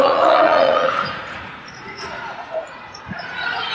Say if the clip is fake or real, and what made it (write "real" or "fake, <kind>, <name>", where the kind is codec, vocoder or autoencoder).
fake, vocoder, Vocos